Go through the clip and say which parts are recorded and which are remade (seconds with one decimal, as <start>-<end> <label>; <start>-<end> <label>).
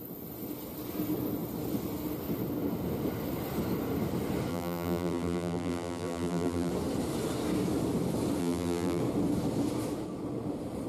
0.0-4.5 recorded; 4.5-6.7 remade; 6.7-8.4 recorded; 8.4-9.0 remade; 9.0-10.9 recorded